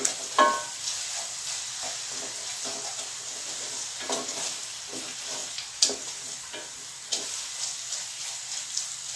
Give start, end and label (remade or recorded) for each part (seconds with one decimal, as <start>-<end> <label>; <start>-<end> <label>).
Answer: 0.0-9.2 recorded